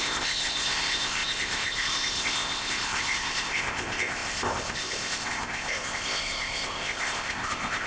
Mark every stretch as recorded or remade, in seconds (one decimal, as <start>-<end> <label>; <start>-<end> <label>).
0.0-7.9 remade